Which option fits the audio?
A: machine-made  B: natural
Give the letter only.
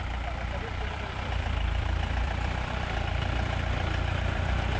A